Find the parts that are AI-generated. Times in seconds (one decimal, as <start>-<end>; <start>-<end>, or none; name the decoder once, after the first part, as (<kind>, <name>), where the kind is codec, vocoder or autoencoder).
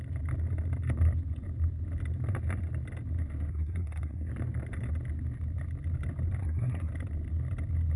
3.5-4.3 (codec, SNAC); 6.4-6.9